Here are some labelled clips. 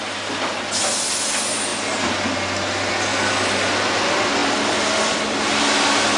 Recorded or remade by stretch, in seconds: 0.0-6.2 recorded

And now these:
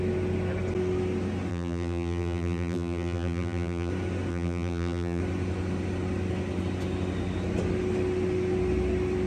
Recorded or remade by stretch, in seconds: 0.0-1.5 recorded; 1.5-3.9 remade; 3.9-4.3 recorded; 4.3-5.2 remade; 5.2-9.3 recorded

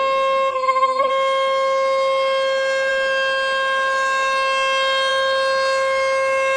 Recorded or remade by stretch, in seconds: 0.0-0.5 recorded; 0.5-1.1 remade; 1.1-6.6 recorded

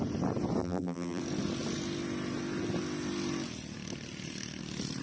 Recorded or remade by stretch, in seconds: 0.0-0.6 recorded; 0.6-1.2 remade; 1.2-5.0 recorded

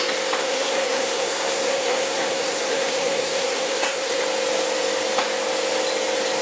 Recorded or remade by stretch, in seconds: 0.0-0.4 recorded; 0.4-4.2 remade; 4.2-6.4 recorded